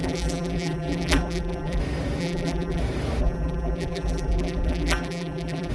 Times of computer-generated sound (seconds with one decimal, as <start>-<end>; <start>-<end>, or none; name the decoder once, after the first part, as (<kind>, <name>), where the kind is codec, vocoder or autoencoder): 0.0-1.8 (vocoder, BigVGAN v2); 2.2-2.8; 3.2-5.7